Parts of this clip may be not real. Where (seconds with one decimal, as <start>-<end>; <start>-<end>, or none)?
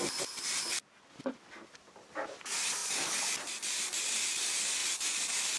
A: 0.0-0.7; 1.7-5.6